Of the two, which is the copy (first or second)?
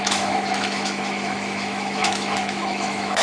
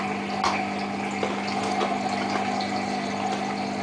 first